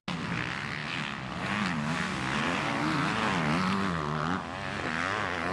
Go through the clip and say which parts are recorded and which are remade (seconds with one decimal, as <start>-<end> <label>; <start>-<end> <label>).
0.0-5.5 recorded